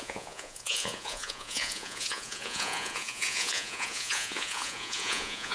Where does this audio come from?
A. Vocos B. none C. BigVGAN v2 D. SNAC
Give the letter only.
A